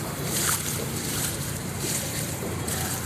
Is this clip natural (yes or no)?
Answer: no